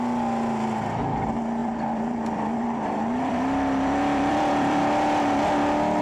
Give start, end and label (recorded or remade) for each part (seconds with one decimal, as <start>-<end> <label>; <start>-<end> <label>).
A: 0.0-1.6 recorded; 1.6-4.8 remade; 4.8-6.0 recorded